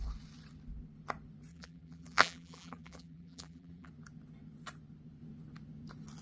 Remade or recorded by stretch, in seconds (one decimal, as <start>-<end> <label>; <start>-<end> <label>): 0.0-1.5 recorded; 1.5-3.9 remade; 3.9-6.2 recorded